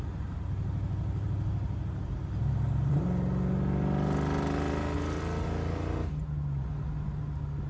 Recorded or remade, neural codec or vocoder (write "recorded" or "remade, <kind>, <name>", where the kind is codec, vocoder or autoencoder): recorded